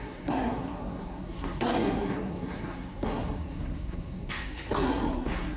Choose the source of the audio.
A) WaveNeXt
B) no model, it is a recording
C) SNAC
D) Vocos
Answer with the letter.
C